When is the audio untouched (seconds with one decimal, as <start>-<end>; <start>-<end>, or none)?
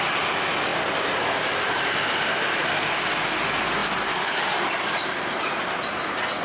0.0-6.4